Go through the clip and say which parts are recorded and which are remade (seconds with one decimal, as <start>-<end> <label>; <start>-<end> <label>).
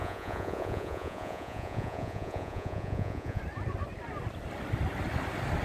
0.0-3.4 remade; 3.4-5.6 recorded